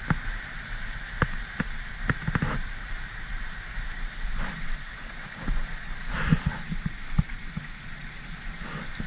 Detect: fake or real real